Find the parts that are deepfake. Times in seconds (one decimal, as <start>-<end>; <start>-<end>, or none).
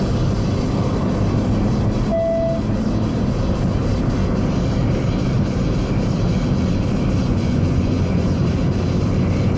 7.2-8.4